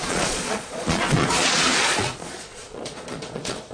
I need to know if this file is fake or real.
fake